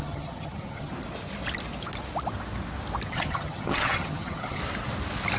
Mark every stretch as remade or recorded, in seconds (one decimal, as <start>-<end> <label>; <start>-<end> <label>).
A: 0.0-0.9 remade; 0.9-3.1 recorded; 3.1-4.6 remade; 4.6-5.4 recorded